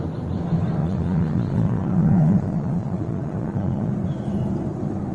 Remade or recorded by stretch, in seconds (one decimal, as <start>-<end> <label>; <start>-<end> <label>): 0.0-0.8 recorded; 0.8-3.9 remade; 3.9-5.1 recorded